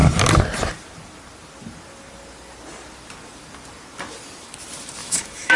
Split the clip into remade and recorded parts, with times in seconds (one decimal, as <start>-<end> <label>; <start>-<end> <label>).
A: 0.0-5.0 recorded; 5.0-5.6 remade